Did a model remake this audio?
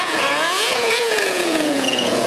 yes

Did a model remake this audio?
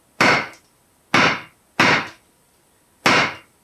no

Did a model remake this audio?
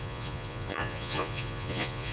yes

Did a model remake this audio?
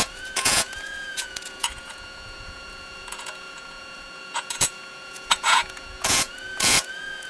yes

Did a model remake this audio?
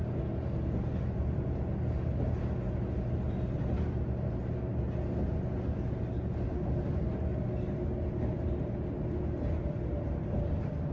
no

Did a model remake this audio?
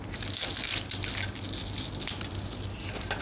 no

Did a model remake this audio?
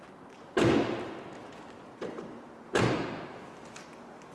no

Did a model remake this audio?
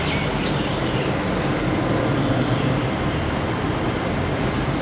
no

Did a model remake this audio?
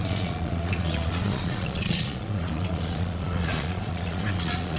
yes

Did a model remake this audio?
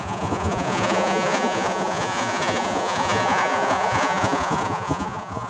yes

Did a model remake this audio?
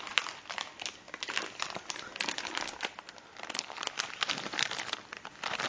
no